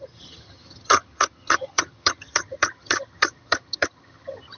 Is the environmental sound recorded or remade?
remade